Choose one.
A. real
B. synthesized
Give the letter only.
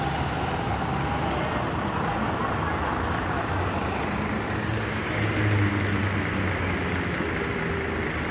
A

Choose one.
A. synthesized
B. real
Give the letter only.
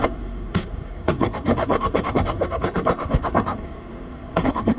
A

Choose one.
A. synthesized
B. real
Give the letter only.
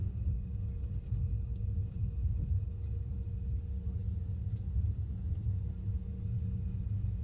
B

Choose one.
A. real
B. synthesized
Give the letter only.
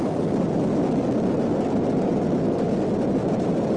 A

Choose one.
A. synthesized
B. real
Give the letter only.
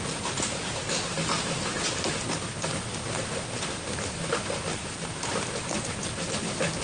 B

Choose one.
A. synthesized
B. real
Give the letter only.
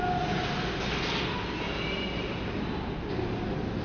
B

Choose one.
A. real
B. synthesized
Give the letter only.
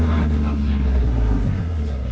B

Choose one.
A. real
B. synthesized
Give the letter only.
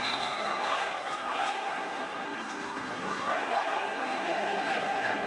B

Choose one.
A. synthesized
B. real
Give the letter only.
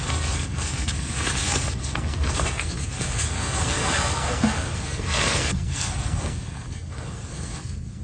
A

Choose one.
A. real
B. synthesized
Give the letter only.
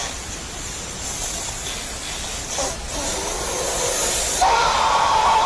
A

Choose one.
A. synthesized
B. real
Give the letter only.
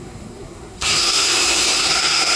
A